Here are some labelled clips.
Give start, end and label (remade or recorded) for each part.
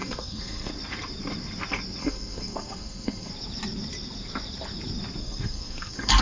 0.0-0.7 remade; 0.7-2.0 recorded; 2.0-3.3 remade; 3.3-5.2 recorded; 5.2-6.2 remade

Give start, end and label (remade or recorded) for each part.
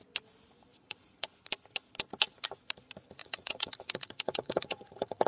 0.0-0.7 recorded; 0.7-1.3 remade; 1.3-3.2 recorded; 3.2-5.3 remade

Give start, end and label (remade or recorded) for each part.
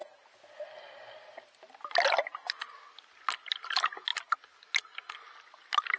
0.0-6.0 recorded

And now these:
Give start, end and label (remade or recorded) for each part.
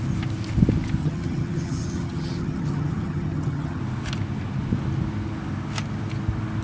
0.0-1.0 recorded; 1.0-3.8 remade; 3.8-6.6 recorded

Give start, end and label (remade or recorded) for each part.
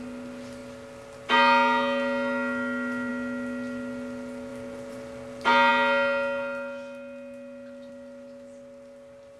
0.0-9.4 recorded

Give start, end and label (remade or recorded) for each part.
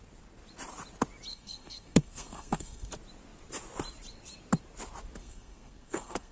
0.0-1.3 recorded; 1.3-2.9 remade; 2.9-5.2 recorded; 5.2-6.3 remade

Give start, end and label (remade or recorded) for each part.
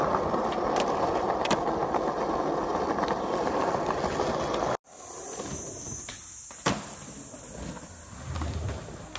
0.0-1.8 recorded; 1.8-2.3 remade; 2.3-9.2 recorded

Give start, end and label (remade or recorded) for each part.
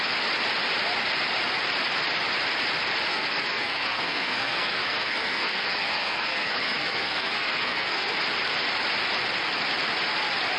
0.0-3.1 recorded; 3.1-8.2 remade; 8.2-10.6 recorded